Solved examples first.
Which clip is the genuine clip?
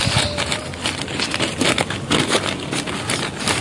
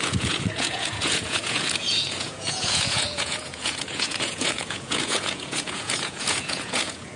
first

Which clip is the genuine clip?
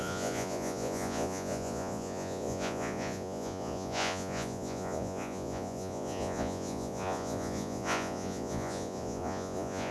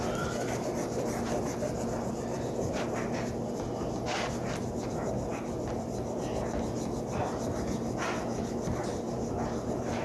second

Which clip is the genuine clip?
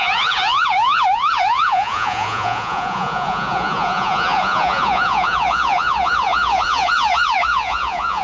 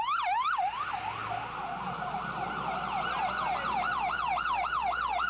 second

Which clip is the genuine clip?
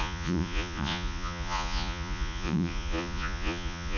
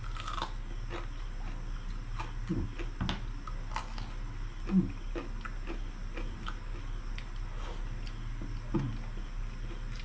second